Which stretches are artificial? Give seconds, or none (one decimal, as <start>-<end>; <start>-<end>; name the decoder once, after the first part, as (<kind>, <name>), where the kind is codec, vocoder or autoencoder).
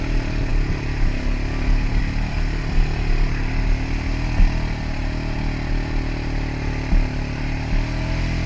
none